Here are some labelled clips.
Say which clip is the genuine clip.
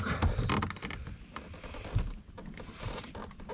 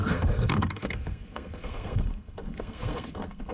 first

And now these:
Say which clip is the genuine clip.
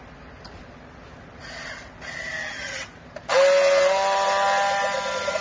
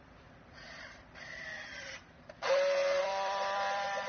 first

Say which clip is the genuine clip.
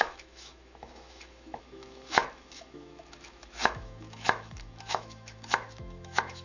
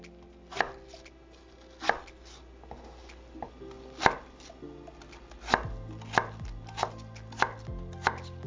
second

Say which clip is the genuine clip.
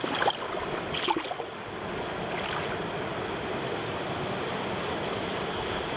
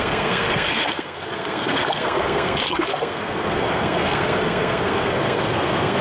first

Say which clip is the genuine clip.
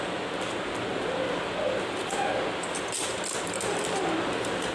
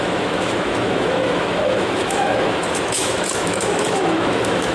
first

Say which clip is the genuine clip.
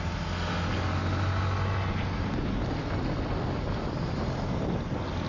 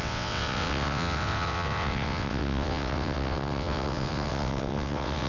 first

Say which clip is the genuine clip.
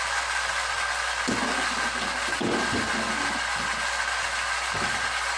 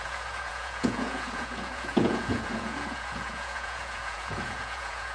first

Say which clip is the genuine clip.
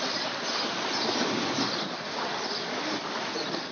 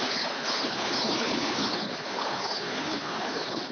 first